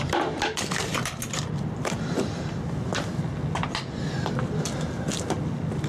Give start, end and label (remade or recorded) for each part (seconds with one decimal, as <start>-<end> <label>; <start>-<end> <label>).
0.0-5.9 recorded